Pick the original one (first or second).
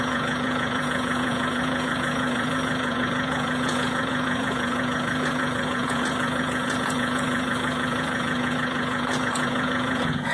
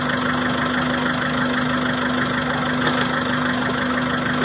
second